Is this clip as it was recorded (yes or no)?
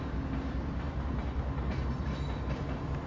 yes